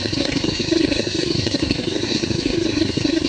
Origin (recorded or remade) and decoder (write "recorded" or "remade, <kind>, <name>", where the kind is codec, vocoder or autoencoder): remade, codec, SNAC